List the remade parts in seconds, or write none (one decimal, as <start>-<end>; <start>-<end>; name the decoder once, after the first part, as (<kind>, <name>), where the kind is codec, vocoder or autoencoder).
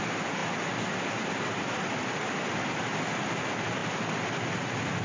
none